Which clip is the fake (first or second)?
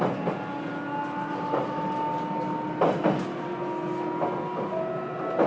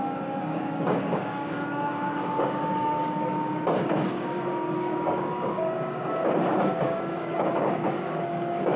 second